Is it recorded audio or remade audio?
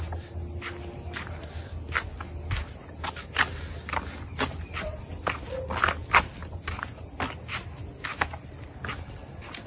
recorded